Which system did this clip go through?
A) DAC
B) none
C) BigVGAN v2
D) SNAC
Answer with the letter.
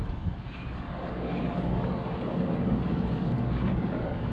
A